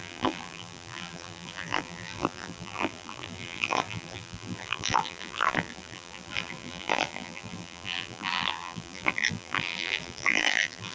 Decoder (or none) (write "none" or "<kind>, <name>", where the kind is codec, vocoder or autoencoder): vocoder, BigVGAN v2